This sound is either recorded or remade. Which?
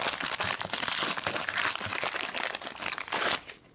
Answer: remade